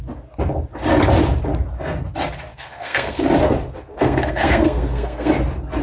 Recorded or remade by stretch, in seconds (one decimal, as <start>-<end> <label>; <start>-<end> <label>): 0.0-2.5 recorded; 2.5-3.2 remade; 3.2-3.9 recorded; 3.9-5.3 remade; 5.3-5.8 recorded